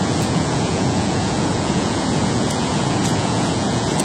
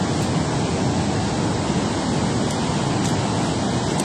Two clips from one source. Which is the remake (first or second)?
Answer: first